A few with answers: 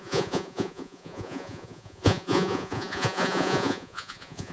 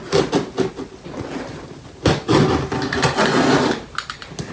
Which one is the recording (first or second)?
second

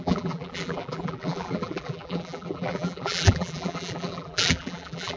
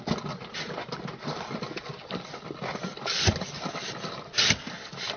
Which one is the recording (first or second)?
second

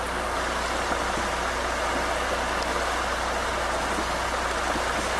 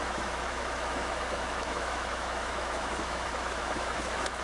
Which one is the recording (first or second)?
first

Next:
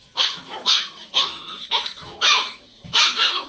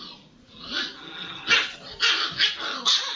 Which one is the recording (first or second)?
second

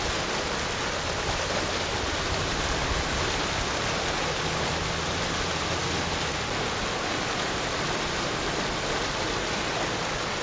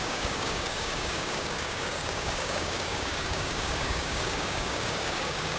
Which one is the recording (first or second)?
first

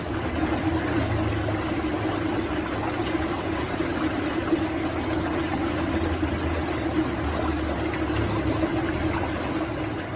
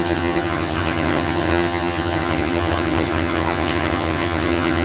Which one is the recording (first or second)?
first